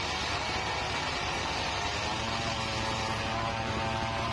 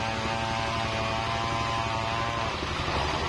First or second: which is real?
second